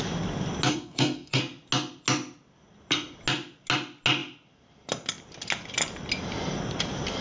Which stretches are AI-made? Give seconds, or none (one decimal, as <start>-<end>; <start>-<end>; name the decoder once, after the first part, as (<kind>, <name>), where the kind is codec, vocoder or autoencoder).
0.7-1.4 (codec, SNAC)